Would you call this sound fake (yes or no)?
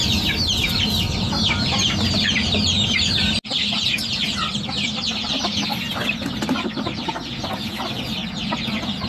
no